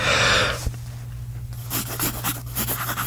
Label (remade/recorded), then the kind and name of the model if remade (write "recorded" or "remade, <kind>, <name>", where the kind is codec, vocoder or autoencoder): recorded